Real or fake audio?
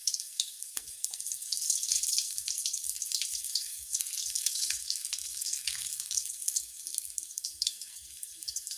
fake